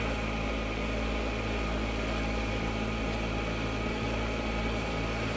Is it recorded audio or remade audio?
recorded